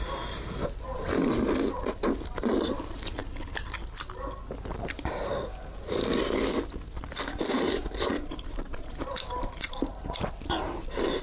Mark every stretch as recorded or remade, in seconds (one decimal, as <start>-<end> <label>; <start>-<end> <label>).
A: 0.0-8.1 recorded; 8.1-10.3 remade; 10.3-11.2 recorded